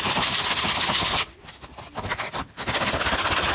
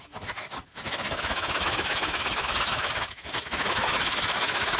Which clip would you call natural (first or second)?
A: first